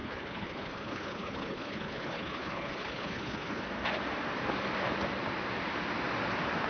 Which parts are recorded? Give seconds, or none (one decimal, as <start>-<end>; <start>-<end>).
3.6-6.7